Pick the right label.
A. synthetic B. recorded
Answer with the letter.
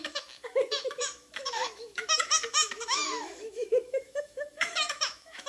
A